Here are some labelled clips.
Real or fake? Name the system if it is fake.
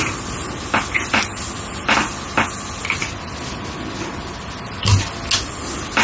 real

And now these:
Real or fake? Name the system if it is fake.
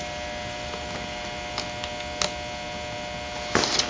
real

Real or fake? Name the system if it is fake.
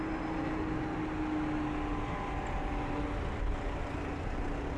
real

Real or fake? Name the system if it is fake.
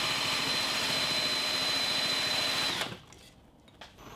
real